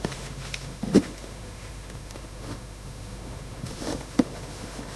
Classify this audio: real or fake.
fake